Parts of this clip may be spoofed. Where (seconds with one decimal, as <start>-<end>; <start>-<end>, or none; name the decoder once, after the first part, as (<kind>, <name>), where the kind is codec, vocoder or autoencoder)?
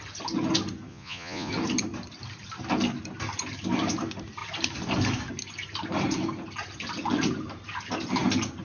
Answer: 0.9-1.5 (vocoder, Vocos)